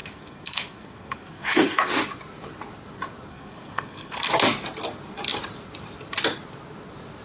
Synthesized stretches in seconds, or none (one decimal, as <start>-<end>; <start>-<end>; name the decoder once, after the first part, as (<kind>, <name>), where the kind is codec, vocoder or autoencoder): 0.0-1.9 (codec, SNAC); 3.3-4.3